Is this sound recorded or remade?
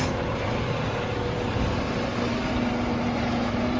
recorded